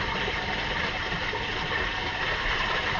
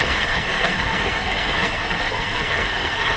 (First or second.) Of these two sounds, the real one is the first